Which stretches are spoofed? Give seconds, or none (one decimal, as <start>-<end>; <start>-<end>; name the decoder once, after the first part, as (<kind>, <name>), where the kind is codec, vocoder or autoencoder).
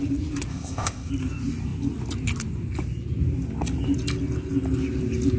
0.5-1.1 (codec, ZipCodec)